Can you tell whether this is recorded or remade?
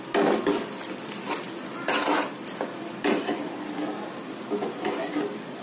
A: recorded